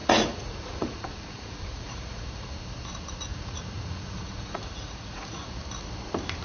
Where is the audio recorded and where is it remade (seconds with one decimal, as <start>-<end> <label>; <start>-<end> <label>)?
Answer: 0.0-2.5 remade; 2.5-3.3 recorded; 3.3-5.5 remade; 5.5-6.4 recorded

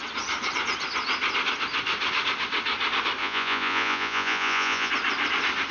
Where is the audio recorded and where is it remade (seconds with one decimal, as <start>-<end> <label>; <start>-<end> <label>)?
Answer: 0.0-3.2 recorded; 3.2-4.9 remade; 4.9-5.7 recorded

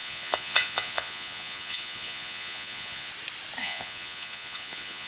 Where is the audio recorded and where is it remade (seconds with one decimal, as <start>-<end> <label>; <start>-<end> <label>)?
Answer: 0.0-3.1 remade; 3.1-3.6 recorded; 3.6-5.1 remade

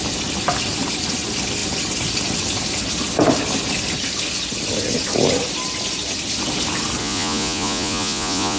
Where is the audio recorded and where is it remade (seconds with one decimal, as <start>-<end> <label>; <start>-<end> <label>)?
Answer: 0.0-7.0 recorded; 7.0-8.6 remade

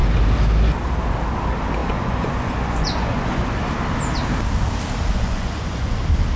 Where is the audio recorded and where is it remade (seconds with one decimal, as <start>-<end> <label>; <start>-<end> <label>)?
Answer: 0.0-1.8 recorded; 1.8-3.5 remade; 3.5-5.1 recorded; 5.1-6.0 remade; 6.0-6.4 recorded

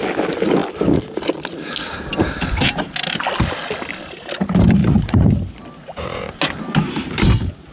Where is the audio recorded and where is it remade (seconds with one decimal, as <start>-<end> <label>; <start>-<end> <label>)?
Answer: 0.0-4.8 recorded; 4.8-5.3 remade; 5.3-5.8 recorded; 5.8-6.3 remade; 6.3-7.7 recorded

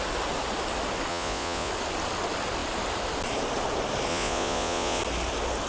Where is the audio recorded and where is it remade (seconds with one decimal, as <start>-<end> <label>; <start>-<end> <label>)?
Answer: 0.0-1.1 recorded; 1.1-1.7 remade; 1.7-4.1 recorded; 4.1-5.0 remade; 5.0-5.7 recorded

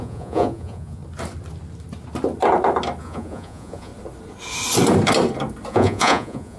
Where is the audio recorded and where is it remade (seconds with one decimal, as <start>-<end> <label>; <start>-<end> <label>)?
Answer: 0.0-1.0 remade; 1.0-3.0 recorded; 3.0-3.9 remade; 3.9-5.7 recorded; 5.7-6.6 remade